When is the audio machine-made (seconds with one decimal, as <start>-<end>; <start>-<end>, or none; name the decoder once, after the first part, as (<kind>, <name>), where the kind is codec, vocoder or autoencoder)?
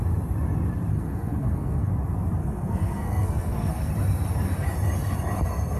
0.9-1.9 (codec, SNAC); 2.4-3.9